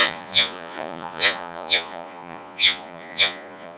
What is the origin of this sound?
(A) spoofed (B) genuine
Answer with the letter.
A